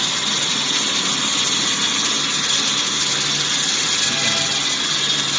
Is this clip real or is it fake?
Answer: real